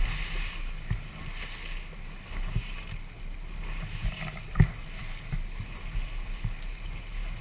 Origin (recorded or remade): recorded